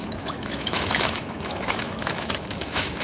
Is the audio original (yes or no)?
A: no